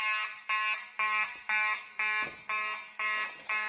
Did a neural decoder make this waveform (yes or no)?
no